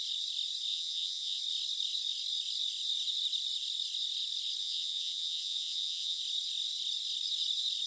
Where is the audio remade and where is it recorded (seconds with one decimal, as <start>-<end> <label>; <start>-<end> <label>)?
0.0-0.7 recorded; 0.7-1.4 remade; 1.4-4.6 recorded; 4.6-6.2 remade; 6.2-7.9 recorded

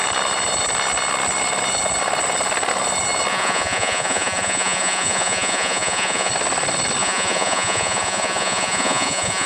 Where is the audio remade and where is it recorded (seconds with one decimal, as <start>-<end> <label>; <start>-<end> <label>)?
0.0-3.3 recorded; 3.3-6.3 remade; 6.3-7.0 recorded; 7.0-9.5 remade

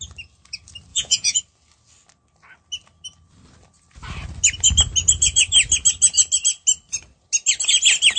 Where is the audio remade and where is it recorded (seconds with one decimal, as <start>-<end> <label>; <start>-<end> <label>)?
0.0-0.9 recorded; 0.9-1.4 remade; 1.4-8.2 recorded

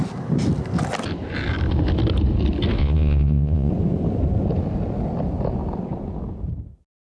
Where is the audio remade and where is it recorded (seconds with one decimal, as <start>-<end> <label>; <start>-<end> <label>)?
0.0-2.8 recorded; 2.8-3.7 remade; 3.7-7.1 recorded

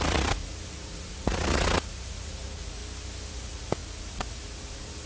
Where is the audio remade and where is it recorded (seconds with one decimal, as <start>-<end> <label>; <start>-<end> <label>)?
0.0-2.8 remade; 2.8-3.3 recorded; 3.3-5.1 remade

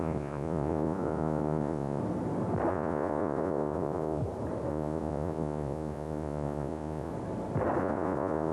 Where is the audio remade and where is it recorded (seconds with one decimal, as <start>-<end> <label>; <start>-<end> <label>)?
0.0-2.0 remade; 2.0-2.7 recorded; 2.7-4.2 remade; 4.2-4.7 recorded; 4.7-7.1 remade; 7.1-7.8 recorded; 7.8-8.5 remade